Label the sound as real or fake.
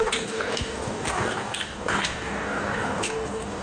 fake